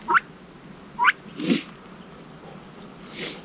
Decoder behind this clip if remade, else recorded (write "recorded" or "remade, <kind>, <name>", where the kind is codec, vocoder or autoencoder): recorded